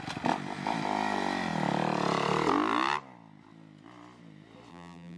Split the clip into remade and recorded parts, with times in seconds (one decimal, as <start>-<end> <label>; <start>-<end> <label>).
0.0-4.7 recorded; 4.7-5.2 remade

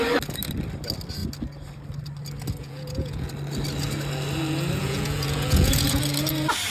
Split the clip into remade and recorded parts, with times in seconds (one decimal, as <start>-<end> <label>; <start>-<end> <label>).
0.0-2.6 recorded; 2.6-3.3 remade; 3.3-4.8 recorded; 4.8-6.0 remade; 6.0-6.7 recorded